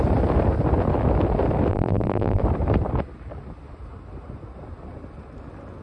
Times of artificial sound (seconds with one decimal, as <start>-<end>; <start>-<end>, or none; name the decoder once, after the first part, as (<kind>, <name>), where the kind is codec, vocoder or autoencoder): 1.7-2.4 (vocoder, BigVGAN v2)